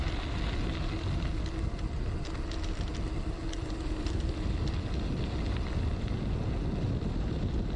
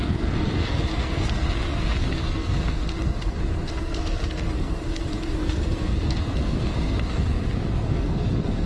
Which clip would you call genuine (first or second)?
first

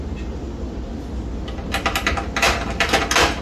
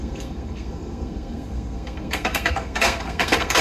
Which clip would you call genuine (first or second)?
first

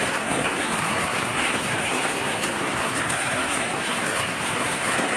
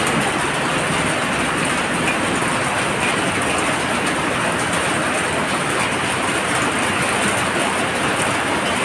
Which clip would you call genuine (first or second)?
second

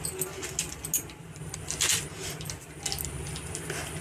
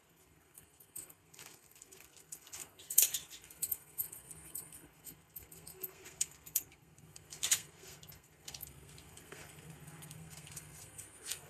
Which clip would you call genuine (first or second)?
first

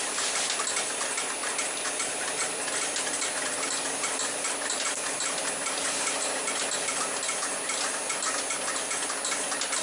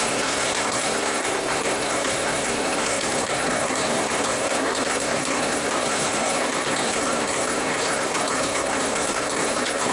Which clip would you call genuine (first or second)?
first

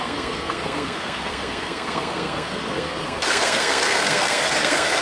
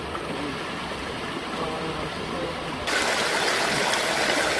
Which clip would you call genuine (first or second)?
second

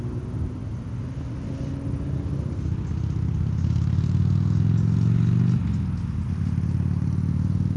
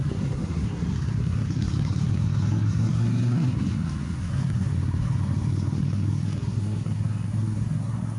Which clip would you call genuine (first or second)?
first